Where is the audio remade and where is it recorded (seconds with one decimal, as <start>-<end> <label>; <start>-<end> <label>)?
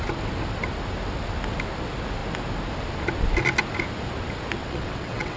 0.0-4.6 recorded; 4.6-5.4 remade